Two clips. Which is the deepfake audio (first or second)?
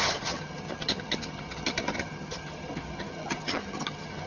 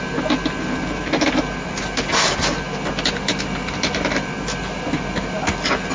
first